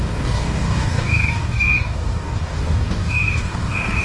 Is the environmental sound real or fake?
fake